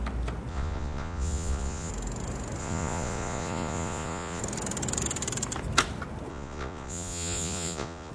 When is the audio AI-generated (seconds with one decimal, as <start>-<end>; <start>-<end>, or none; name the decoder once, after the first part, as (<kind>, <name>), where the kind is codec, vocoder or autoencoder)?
0.5-1.9 (vocoder, Vocos); 2.6-4.4; 6.3-8.1